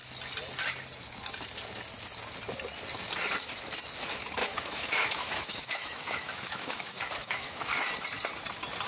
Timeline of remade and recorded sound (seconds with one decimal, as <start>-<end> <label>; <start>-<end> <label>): 0.0-4.4 recorded; 4.4-7.9 remade; 7.9-8.9 recorded